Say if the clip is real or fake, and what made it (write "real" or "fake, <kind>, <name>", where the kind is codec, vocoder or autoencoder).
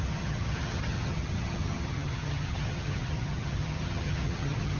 fake, vocoder, HiFi-GAN